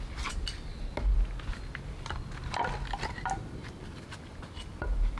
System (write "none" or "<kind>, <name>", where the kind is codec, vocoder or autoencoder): none